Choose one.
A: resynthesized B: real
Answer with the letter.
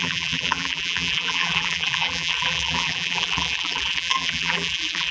A